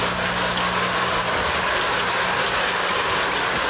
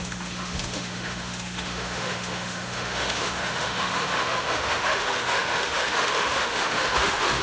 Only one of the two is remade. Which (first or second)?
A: second